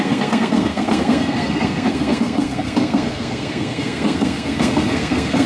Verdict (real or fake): fake